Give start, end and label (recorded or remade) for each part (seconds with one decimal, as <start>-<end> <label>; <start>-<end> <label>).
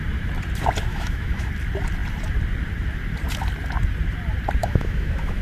0.0-0.9 recorded; 0.9-1.5 remade; 1.5-4.6 recorded; 4.6-5.4 remade